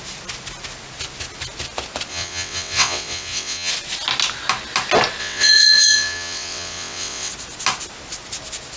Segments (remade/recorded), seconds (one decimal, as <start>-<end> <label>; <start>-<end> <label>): 0.0-2.1 recorded; 2.1-3.7 remade; 3.7-5.2 recorded; 5.2-7.3 remade; 7.3-8.8 recorded